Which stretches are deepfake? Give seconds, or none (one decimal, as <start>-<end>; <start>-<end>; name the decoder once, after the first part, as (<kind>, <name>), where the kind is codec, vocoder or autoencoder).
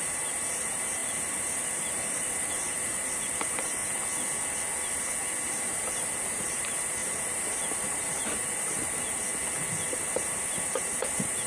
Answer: 0.0-3.8 (vocoder, BigVGAN v2); 5.5-9.3; 9.9-11.5